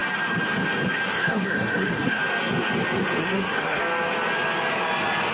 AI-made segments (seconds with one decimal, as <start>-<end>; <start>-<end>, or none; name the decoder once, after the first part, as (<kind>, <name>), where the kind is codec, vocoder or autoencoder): 1.1-2.2 (codec, SNAC); 3.2-3.8